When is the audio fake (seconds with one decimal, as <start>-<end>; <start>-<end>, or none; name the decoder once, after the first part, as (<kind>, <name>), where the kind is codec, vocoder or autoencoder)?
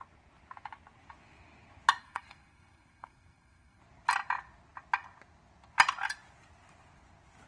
2.0-3.8 (codec, SNAC)